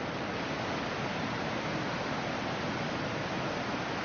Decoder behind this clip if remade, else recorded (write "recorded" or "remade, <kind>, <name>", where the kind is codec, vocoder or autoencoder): recorded